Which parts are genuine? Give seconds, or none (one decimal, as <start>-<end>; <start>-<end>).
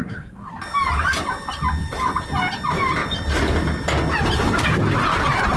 0.5-5.6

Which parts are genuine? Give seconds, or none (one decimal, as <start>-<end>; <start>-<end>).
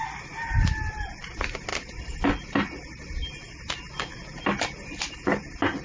0.0-5.8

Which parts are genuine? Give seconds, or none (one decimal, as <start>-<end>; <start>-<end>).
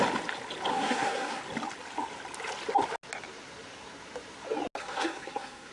0.0-0.7; 1.4-4.8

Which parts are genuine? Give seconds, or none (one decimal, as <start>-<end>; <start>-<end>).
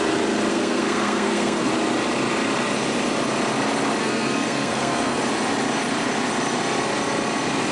0.0-0.5; 1.7-4.0; 5.2-7.7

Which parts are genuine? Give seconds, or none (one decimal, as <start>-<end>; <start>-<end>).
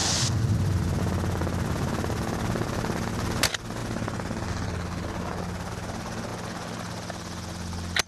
0.0-8.1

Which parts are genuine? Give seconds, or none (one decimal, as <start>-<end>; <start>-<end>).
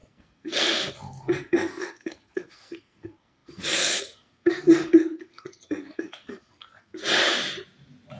7.0-8.2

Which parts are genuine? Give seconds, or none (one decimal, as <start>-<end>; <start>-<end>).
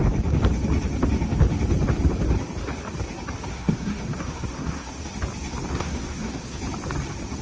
0.0-3.5; 5.0-5.7; 6.6-7.4